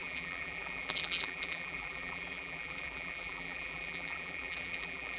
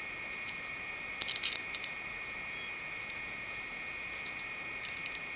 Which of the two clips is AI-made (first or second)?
first